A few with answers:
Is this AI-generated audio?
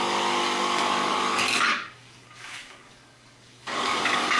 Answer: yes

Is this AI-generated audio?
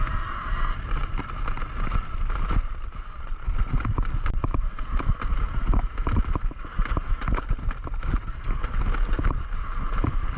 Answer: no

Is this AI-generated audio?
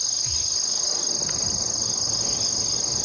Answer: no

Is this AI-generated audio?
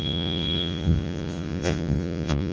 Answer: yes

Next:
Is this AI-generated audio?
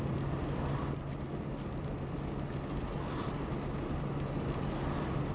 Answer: no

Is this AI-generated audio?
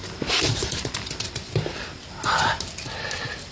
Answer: no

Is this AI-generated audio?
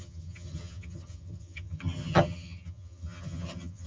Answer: yes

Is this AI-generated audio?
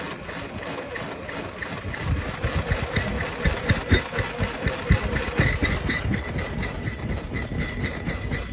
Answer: no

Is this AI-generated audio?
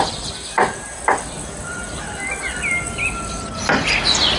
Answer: no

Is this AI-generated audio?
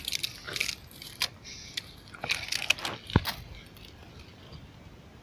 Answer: no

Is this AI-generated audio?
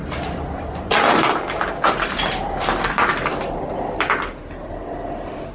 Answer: no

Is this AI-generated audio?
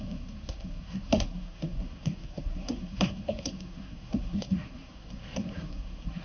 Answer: yes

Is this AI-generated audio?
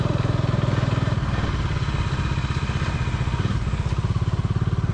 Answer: no